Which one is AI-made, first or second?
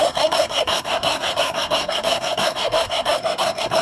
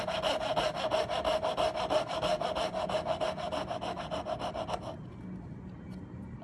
first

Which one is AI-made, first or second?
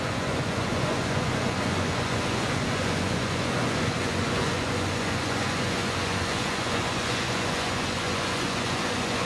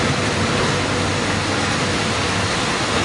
first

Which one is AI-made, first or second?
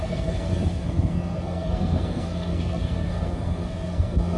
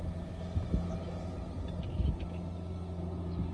first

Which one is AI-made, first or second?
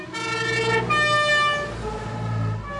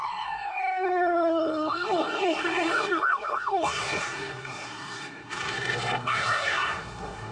second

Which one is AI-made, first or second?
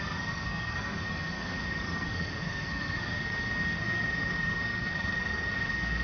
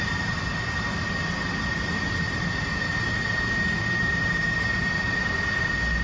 first